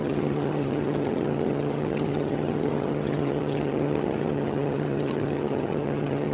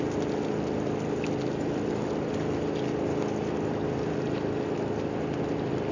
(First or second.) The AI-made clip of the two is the first